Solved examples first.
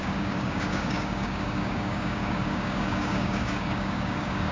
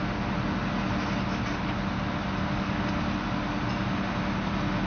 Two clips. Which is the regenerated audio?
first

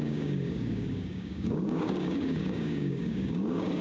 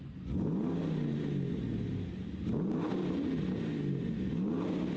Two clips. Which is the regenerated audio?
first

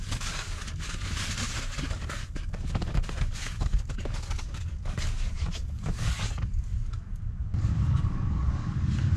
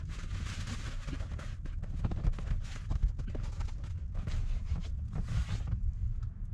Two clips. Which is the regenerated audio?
first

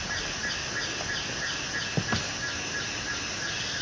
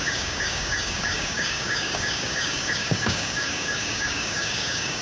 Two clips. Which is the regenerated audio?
second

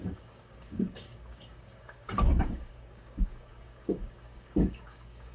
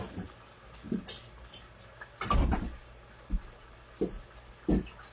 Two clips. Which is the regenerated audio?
first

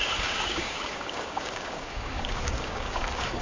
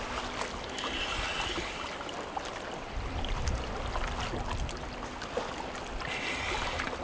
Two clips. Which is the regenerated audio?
first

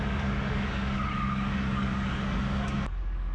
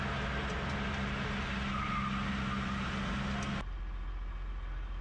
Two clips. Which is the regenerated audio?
first